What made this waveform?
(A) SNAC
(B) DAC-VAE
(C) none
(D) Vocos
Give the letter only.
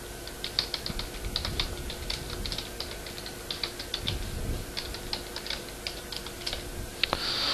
C